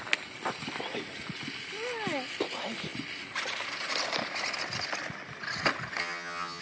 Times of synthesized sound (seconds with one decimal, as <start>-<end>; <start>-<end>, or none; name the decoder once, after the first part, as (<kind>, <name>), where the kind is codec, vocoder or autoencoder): 6.0-6.6 (vocoder, HiFi-GAN)